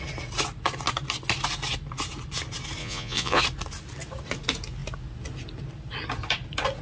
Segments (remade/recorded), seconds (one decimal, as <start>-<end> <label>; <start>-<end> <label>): 0.0-2.8 recorded; 2.8-3.4 remade; 3.4-6.8 recorded